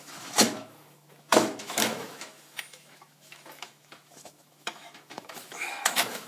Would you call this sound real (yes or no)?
no